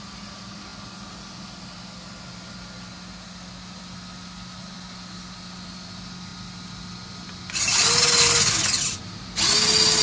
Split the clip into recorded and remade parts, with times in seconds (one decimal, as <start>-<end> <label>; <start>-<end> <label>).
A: 0.0-10.0 recorded